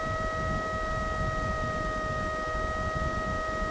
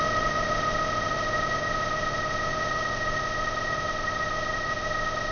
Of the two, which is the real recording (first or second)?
first